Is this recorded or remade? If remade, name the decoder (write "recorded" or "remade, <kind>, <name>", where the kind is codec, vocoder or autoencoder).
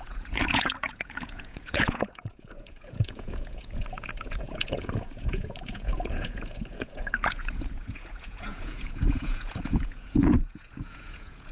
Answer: remade, vocoder, Vocos